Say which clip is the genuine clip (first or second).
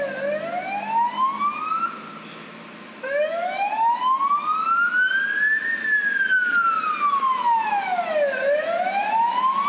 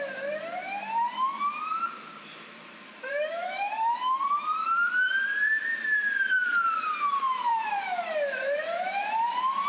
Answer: first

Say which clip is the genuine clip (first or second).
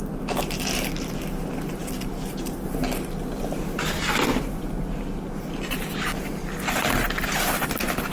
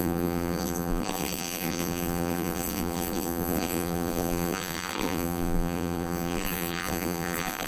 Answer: first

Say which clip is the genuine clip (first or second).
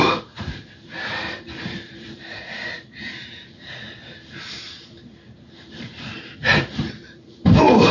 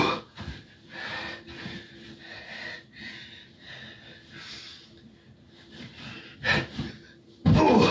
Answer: second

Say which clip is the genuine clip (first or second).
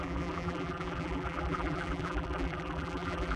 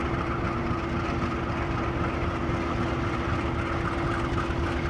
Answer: second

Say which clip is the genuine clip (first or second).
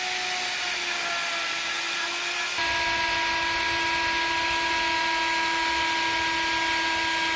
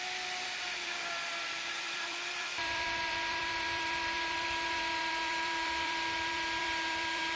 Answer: first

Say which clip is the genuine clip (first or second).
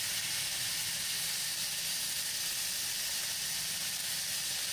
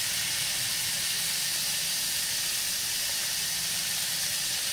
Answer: first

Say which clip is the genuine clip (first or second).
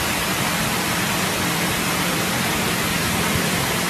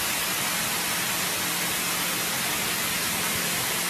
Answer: second